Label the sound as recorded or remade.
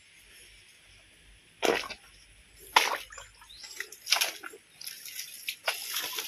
recorded